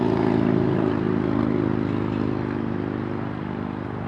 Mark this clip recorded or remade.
recorded